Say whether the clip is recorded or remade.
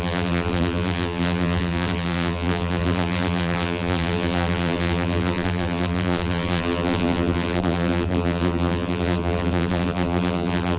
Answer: remade